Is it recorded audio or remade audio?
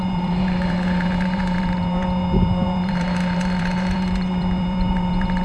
remade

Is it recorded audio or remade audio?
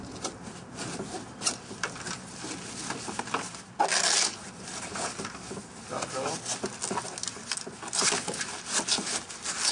recorded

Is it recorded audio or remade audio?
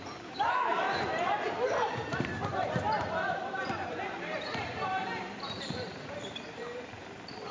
remade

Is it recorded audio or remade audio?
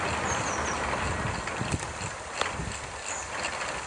recorded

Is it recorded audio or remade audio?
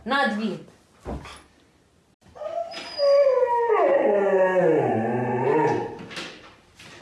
recorded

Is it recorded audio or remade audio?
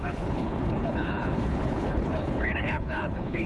remade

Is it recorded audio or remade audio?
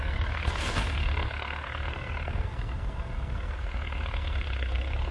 remade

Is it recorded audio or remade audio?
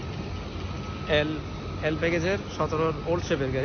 recorded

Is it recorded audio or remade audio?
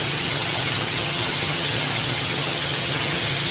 remade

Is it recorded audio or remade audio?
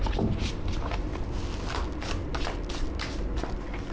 recorded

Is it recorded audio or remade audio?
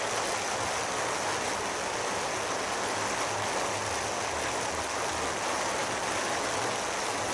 recorded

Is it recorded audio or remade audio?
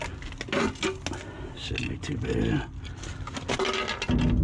recorded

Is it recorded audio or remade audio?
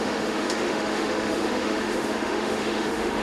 remade